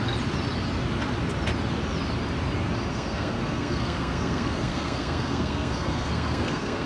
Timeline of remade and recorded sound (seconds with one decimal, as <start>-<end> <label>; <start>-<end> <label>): 0.0-2.9 recorded; 2.9-6.9 remade

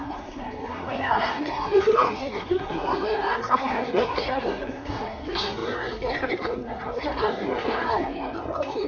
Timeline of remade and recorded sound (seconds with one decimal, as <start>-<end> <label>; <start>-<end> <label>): 0.0-8.9 remade